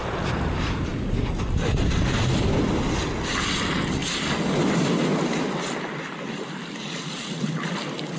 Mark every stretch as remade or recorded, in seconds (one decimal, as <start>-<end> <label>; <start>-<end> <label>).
0.0-8.2 recorded